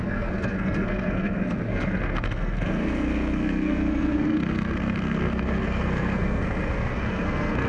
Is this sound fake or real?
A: fake